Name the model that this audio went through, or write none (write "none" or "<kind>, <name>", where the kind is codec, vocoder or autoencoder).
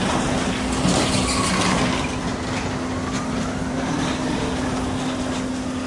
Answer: none